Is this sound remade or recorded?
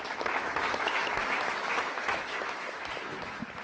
remade